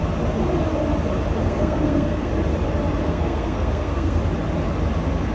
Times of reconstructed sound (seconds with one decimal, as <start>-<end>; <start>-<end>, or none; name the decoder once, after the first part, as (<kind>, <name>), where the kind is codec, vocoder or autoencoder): 1.4-2.3 (codec, SNAC); 3.0-4.2